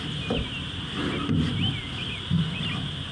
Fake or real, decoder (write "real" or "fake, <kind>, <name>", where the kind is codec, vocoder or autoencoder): real